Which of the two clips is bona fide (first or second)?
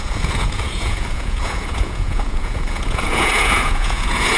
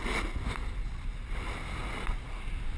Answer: second